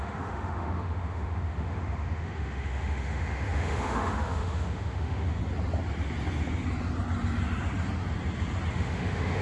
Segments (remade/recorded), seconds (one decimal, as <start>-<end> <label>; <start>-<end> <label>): 0.0-5.4 remade; 5.4-8.7 recorded; 8.7-9.4 remade

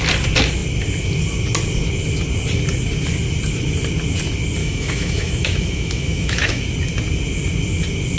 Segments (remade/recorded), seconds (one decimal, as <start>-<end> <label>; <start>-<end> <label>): 0.0-4.6 recorded; 4.6-6.6 remade; 6.6-8.2 recorded

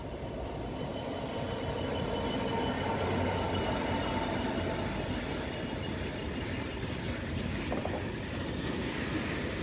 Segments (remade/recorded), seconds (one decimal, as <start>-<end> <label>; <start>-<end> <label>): 0.0-9.6 recorded

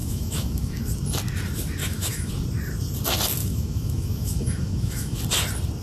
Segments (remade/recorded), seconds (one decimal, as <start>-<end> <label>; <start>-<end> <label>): 0.0-0.8 remade; 0.8-1.8 recorded; 1.8-2.3 remade; 2.3-3.4 recorded; 3.4-5.2 remade; 5.2-5.8 recorded